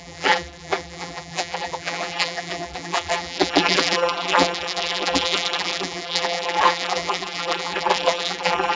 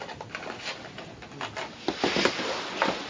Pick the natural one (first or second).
second